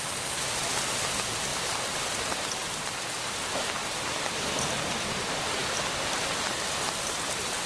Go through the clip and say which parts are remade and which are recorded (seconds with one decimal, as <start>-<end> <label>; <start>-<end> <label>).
0.0-1.5 recorded; 1.5-3.4 remade; 3.4-3.8 recorded; 3.8-4.9 remade; 4.9-7.7 recorded